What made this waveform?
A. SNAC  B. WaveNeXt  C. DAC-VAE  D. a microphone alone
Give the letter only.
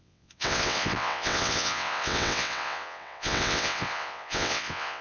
B